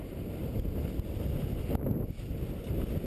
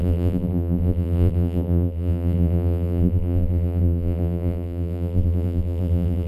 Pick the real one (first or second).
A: first